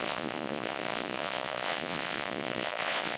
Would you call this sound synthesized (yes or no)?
yes